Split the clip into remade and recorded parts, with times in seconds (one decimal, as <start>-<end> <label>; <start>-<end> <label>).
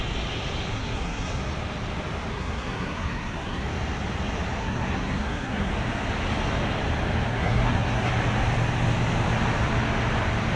0.0-0.7 recorded; 0.7-1.4 remade; 1.4-2.3 recorded; 2.3-3.6 remade; 3.6-4.6 recorded; 4.6-5.7 remade; 5.7-7.3 recorded; 7.3-8.1 remade; 8.1-10.6 recorded